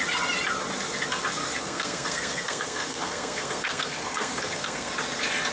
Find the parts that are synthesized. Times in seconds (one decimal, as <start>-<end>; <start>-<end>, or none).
1.6-4.9